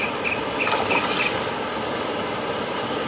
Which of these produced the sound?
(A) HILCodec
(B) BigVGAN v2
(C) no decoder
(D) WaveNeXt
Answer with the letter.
C